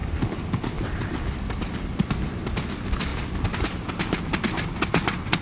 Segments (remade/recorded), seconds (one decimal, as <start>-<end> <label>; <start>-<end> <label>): 0.0-4.9 recorded; 4.9-5.4 remade